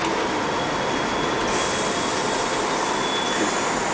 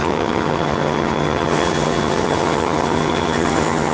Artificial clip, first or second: second